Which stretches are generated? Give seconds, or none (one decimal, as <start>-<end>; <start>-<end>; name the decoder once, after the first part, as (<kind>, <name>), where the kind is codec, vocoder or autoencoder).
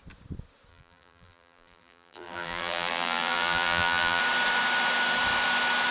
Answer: 0.7-4.2 (vocoder, BigVGAN v2)